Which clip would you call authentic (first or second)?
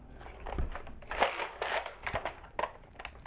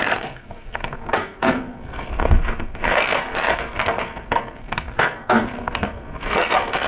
first